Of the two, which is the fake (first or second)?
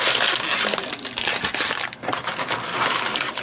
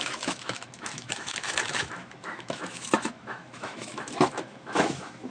second